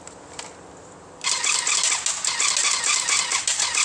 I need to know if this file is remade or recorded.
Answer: recorded